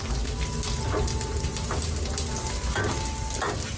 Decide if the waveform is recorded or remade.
recorded